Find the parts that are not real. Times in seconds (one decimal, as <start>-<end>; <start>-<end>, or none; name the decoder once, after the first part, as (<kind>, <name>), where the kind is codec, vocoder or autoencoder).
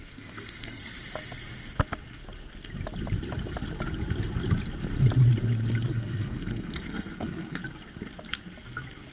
0.0-0.8 (codec, SNAC); 5.9-7.6